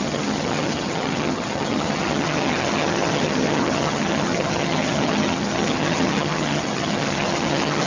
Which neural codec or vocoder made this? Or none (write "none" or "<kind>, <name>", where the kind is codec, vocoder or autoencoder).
vocoder, HiFi-GAN